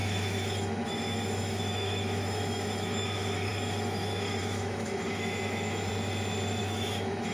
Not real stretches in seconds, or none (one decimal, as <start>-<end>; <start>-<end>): 0.0-5.9; 6.6-7.3